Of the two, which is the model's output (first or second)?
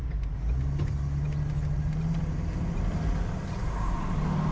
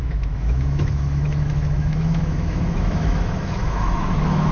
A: second